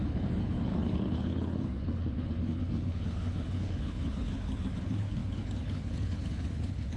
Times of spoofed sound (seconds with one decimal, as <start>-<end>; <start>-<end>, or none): 0.0-7.0